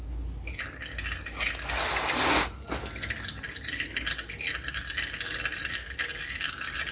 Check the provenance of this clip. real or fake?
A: real